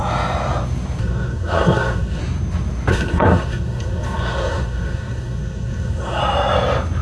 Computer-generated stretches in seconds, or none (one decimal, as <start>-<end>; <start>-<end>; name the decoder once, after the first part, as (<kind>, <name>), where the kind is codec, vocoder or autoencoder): 1.0-2.2 (codec, SNAC); 2.9-6.2